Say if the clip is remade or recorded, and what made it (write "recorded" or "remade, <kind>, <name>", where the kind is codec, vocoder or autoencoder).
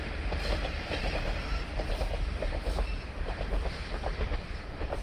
remade, vocoder, BigVGAN v2